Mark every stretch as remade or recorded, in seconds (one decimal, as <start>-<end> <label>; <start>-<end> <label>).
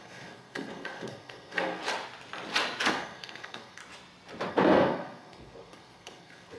0.0-1.8 remade; 1.8-2.9 recorded; 2.9-3.8 remade; 3.8-4.5 recorded; 4.5-6.6 remade